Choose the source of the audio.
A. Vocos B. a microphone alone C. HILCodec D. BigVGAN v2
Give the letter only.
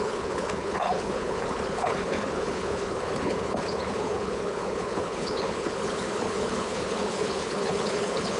C